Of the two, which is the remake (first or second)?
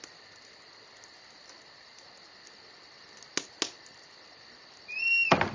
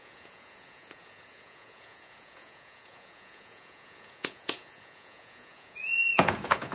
second